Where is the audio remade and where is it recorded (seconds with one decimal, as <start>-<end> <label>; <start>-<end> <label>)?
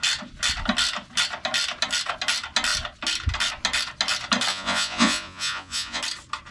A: 0.0-4.5 recorded; 4.5-6.0 remade; 6.0-6.5 recorded